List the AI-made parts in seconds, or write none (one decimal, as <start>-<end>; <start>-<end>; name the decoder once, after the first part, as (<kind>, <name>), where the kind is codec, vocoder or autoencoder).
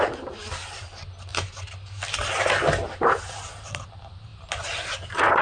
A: none